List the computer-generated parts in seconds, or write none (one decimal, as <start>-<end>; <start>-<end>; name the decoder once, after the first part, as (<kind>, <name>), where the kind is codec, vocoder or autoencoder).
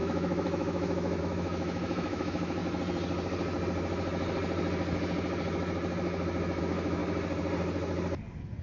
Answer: 0.0-2.6 (autoencoder, DAC-VAE); 6.6-7.0